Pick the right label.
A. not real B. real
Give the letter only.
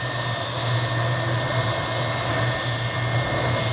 B